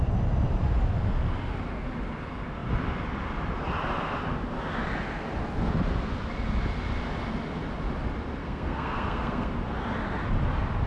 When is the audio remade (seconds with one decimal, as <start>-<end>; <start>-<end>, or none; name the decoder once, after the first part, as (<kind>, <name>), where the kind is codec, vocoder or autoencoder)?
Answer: 8.4-9.5 (codec, SNAC)